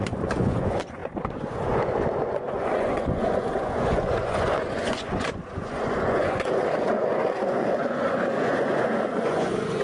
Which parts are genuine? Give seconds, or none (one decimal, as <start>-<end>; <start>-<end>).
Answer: none